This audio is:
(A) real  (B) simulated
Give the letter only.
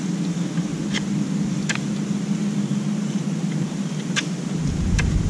A